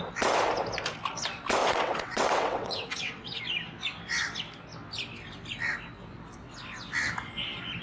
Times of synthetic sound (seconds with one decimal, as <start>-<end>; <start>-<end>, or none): 1.6-3.4